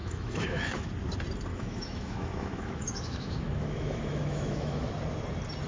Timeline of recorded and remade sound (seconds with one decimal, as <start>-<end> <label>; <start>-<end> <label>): 0.0-0.9 remade; 0.9-1.5 recorded; 1.5-4.9 remade; 4.9-5.7 recorded